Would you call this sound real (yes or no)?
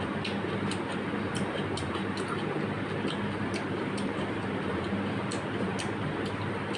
yes